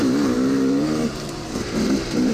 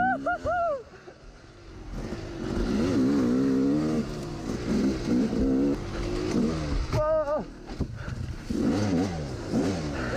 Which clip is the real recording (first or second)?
second